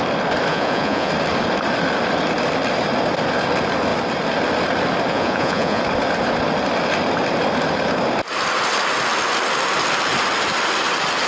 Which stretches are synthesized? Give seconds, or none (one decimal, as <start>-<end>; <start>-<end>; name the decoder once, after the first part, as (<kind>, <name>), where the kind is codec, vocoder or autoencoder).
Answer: 0.5-1.1 (vocoder, Vocos); 5.1-5.8

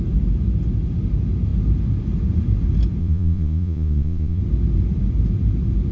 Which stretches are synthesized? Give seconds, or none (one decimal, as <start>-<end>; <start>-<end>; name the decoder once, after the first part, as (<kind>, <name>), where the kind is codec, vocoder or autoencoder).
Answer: 3.0-4.4 (vocoder, Vocos)

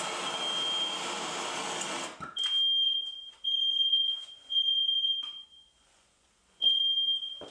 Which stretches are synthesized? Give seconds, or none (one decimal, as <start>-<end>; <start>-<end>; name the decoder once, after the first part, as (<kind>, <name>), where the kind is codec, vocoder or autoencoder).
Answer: 2.8-6.8 (vocoder, Vocos)

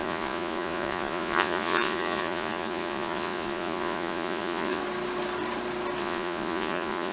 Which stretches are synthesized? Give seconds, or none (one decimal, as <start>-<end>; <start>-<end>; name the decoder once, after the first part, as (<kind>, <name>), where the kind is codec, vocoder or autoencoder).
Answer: 0.0-4.8 (vocoder, Vocos); 6.0-7.1

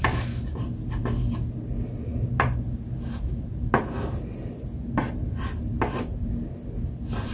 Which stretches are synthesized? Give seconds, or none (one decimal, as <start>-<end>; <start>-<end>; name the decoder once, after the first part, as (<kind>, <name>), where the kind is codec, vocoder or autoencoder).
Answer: none